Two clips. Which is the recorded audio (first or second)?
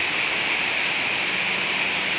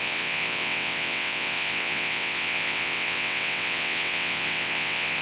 first